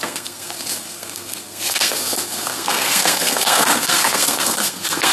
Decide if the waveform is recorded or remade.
remade